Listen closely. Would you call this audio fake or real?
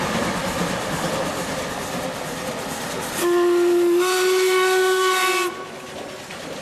real